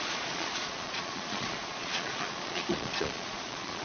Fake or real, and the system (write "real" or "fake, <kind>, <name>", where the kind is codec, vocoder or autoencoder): fake, vocoder, Vocos